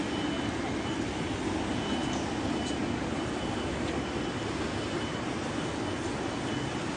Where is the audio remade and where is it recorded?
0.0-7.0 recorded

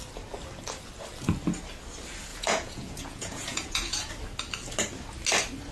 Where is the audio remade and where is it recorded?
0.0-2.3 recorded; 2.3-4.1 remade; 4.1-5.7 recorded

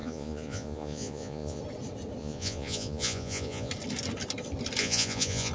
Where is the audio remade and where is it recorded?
0.0-1.6 remade; 1.6-2.2 recorded; 2.2-3.7 remade; 3.7-4.8 recorded; 4.8-5.5 remade

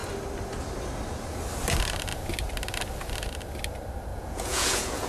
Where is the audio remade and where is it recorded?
0.0-4.1 recorded; 4.1-5.1 remade

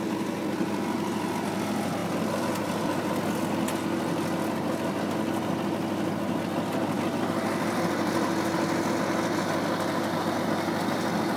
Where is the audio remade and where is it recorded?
0.0-11.4 recorded